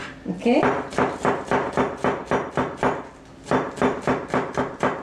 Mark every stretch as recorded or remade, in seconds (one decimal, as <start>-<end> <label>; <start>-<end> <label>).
0.0-5.0 recorded